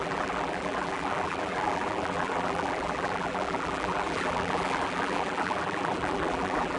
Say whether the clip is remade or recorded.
remade